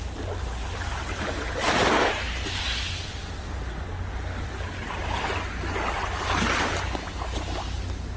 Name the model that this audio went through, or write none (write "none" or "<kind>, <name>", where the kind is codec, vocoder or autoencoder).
none